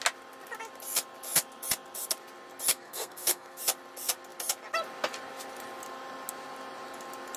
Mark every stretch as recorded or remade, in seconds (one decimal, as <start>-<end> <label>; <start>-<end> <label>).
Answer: 0.0-2.7 recorded; 2.7-3.6 remade; 3.6-7.4 recorded